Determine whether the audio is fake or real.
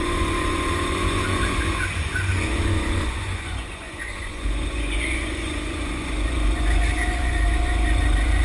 fake